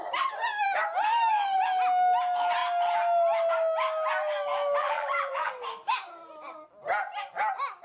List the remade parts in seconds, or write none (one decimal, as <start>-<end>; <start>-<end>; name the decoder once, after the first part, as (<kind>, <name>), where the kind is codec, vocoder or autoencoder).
4.8-5.5 (vocoder, BigVGAN v2)